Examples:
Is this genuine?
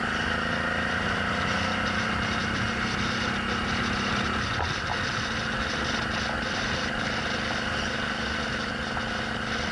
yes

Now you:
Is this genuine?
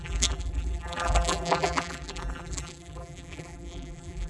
no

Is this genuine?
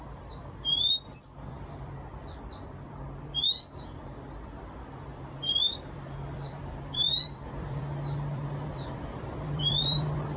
no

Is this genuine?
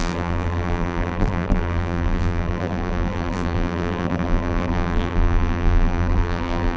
no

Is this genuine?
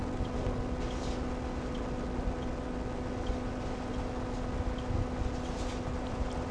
yes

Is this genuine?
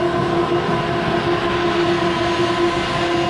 yes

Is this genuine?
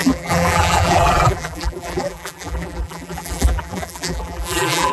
no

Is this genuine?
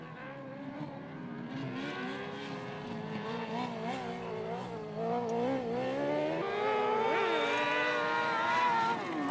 yes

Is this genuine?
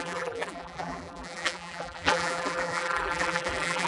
no